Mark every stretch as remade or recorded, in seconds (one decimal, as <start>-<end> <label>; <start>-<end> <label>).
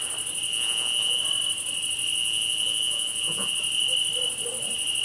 0.0-0.5 recorded; 0.5-1.2 remade; 1.2-2.2 recorded; 2.2-3.5 remade; 3.5-5.0 recorded